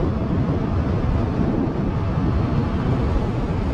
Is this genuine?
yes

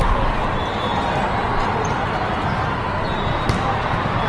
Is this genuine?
yes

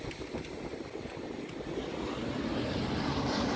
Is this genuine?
yes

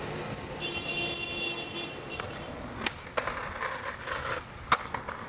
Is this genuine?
yes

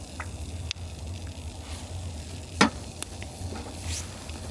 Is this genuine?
yes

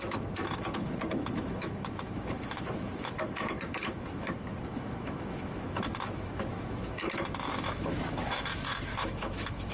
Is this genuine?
no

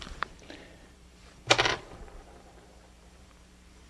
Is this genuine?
no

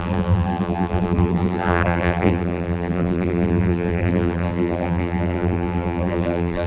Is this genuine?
no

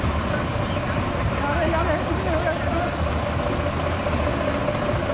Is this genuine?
yes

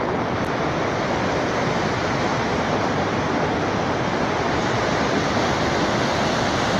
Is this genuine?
yes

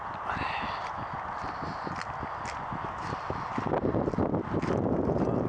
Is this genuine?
yes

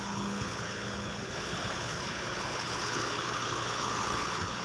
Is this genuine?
no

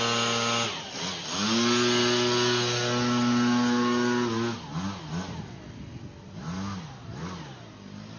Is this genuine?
yes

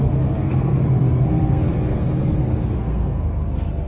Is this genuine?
no